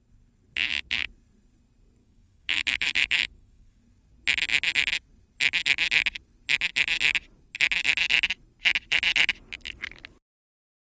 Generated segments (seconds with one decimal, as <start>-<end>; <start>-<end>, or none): 2.0-3.8